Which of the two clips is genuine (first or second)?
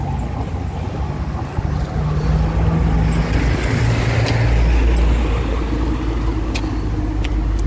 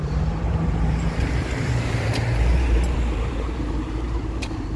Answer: first